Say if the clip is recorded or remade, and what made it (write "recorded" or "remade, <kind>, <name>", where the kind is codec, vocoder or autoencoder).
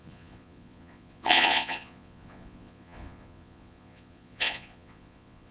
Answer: remade, vocoder, Vocos